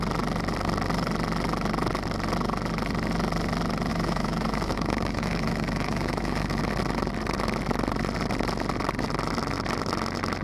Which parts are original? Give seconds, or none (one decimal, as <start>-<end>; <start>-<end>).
0.0-3.9; 6.6-10.4